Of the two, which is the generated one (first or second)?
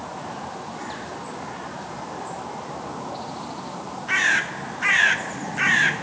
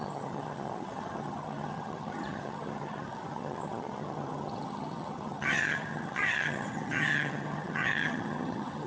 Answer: second